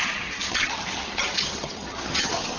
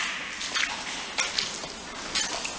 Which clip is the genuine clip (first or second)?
second